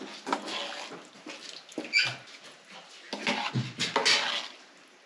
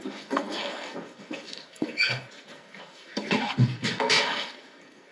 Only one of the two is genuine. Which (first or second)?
first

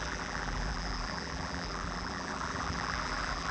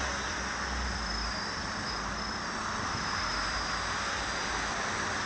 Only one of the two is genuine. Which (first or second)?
second